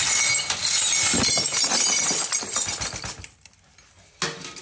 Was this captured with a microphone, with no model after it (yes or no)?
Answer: yes